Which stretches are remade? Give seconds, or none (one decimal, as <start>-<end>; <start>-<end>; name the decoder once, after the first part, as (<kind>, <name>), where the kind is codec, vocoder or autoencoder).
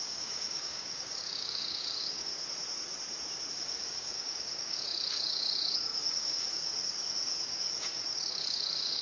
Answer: 0.0-2.3 (codec, DAC); 3.5-9.0